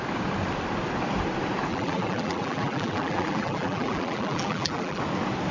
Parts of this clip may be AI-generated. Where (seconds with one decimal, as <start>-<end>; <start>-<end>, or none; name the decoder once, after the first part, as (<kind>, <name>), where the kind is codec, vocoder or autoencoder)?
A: 1.7-5.0 (vocoder, BigVGAN v2)